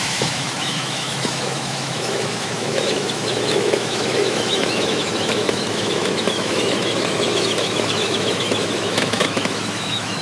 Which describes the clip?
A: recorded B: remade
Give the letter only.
B